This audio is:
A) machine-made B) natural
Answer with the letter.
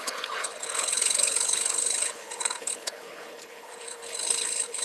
A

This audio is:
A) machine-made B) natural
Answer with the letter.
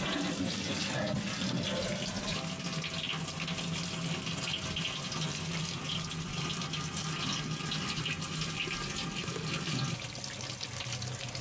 B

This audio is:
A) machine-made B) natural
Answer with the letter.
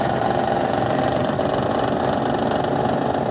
B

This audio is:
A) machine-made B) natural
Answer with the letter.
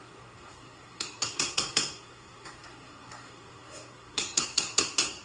A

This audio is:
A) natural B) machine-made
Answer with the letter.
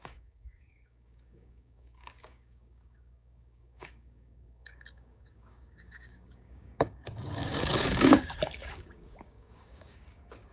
B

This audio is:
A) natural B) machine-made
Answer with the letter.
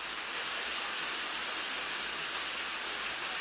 A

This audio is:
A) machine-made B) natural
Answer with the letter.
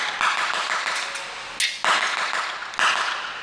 B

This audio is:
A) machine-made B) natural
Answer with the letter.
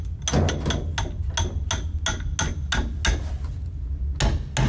B